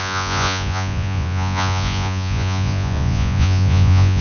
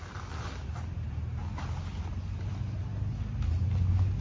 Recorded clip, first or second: second